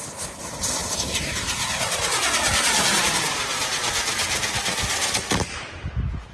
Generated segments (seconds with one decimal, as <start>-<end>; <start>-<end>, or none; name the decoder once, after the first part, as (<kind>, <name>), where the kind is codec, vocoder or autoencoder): none